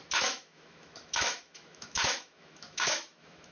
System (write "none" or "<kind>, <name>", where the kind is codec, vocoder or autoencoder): autoencoder, DAC-VAE